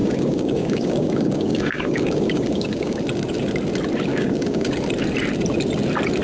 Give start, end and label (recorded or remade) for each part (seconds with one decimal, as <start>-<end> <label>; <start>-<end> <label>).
0.0-3.0 remade; 3.0-4.1 recorded; 4.1-4.7 remade; 4.7-6.2 recorded